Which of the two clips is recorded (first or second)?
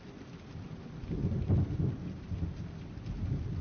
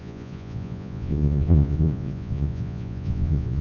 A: first